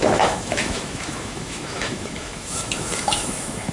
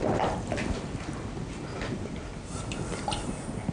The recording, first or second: second